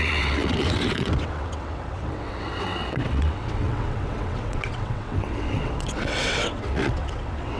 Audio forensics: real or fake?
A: fake